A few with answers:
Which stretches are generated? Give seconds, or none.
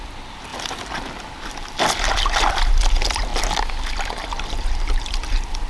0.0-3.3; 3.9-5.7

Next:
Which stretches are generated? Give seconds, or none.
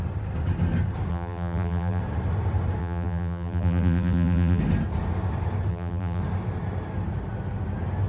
1.1-2.0; 2.8-4.6; 5.7-6.2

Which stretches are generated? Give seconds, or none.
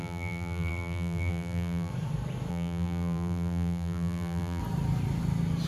0.0-1.9; 2.5-4.6